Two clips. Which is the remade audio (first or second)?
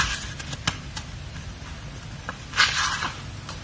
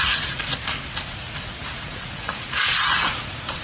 second